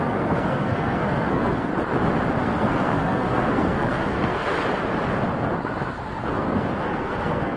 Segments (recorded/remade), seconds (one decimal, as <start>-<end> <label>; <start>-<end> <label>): 0.0-1.7 remade; 1.7-2.4 recorded; 2.4-4.5 remade; 4.5-6.2 recorded; 6.2-7.6 remade